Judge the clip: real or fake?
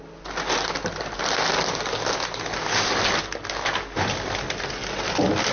real